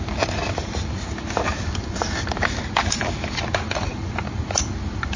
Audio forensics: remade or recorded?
recorded